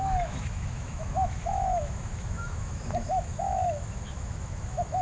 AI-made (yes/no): yes